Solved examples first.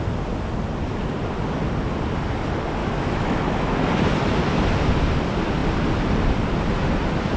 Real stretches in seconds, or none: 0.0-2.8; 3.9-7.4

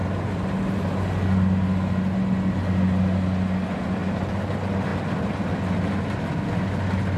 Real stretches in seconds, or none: 0.0-4.0; 4.5-4.9; 5.6-7.2

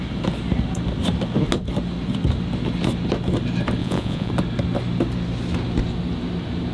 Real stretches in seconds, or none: 0.0-3.8; 4.3-6.7

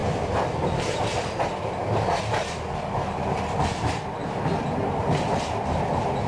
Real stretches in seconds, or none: 0.0-6.3

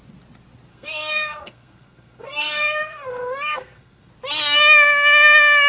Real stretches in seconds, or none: 0.0-0.7; 4.1-5.7